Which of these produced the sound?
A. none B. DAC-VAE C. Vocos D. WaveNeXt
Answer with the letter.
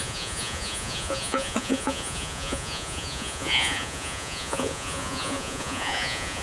C